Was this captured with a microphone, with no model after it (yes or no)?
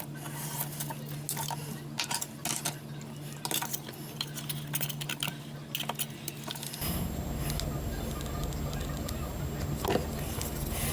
yes